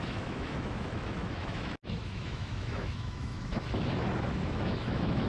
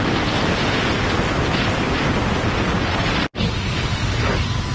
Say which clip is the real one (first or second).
second